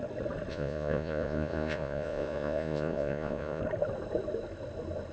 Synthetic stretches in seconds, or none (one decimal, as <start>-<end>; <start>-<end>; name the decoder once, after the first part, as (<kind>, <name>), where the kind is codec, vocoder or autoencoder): 0.5-3.6 (vocoder, Vocos)